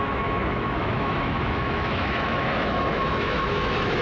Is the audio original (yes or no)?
no